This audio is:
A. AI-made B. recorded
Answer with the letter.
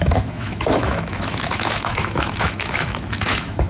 A